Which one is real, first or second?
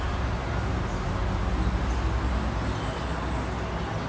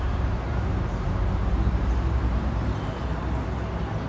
first